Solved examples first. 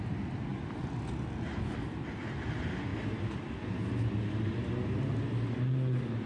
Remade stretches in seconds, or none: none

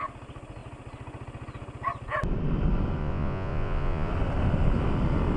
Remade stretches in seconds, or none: 3.0-4.1 (vocoder, Vocos)

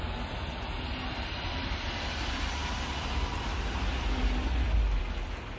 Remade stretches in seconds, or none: none

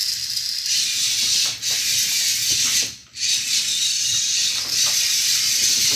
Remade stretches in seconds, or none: 3.0-5.9 (vocoder, BigVGAN v2)

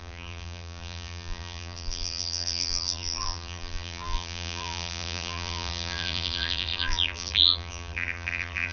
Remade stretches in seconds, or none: 0.0-8.7 (vocoder, BigVGAN v2)

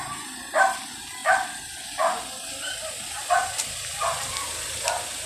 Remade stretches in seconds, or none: none

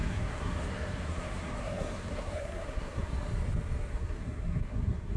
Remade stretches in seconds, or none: 0.0-3.1 (codec, SNAC); 3.9-5.2